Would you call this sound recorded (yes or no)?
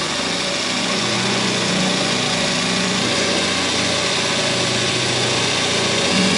no